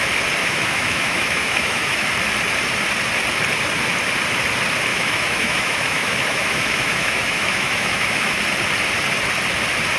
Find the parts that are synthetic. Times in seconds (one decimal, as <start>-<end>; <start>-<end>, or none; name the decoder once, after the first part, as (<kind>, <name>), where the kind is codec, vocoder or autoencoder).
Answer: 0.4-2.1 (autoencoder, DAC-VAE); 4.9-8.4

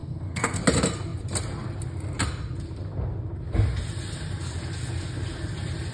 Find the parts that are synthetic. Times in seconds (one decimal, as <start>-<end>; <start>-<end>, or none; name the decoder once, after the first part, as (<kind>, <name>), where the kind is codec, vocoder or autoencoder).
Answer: 0.0-0.6 (codec, SNAC)

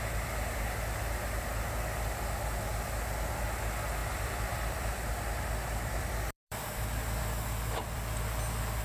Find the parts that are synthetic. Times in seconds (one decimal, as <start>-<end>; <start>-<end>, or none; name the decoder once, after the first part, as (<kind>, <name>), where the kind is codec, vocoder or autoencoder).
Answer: 4.0-8.8 (vocoder, BigVGAN v2)

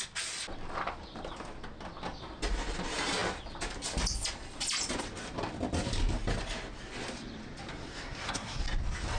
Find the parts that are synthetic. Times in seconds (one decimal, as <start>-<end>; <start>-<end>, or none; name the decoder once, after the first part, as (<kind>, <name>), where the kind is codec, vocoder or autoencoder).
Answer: 7.7-8.6 (codec, SNAC)

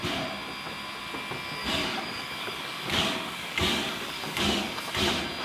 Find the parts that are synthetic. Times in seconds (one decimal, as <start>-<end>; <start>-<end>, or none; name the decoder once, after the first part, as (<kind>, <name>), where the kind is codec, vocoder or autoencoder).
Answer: 1.6-4.8 (codec, DAC)